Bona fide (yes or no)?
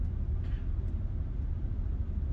yes